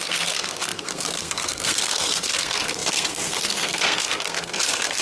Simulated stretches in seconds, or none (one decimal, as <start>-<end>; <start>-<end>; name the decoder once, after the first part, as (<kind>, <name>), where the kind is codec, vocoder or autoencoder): 0.0-5.0 (codec, SNAC)